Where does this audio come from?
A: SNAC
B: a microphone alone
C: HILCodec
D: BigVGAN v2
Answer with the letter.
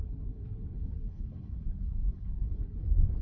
C